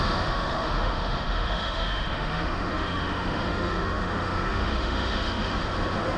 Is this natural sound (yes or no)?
no